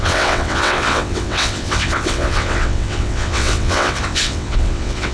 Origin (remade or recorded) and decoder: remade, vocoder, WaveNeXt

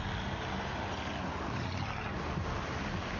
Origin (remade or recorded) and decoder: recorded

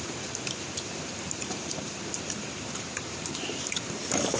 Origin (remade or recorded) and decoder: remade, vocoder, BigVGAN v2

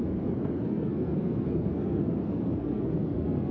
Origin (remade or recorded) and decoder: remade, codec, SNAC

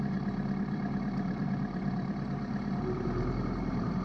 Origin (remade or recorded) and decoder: remade, vocoder, BigVGAN v2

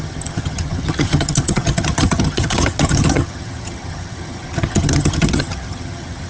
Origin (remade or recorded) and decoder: remade, vocoder, HiFi-GAN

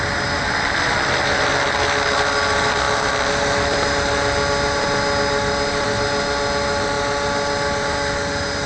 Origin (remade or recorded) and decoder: recorded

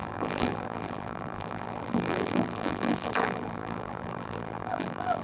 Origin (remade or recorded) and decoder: remade, vocoder, BigVGAN v2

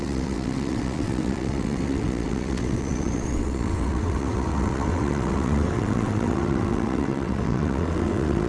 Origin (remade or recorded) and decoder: remade, vocoder, WaveNeXt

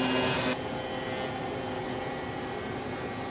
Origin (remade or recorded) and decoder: recorded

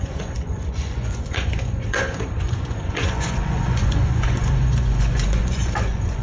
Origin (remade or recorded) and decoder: remade, vocoder, Vocos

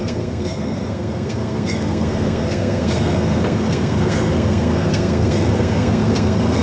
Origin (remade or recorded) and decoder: remade, codec, SNAC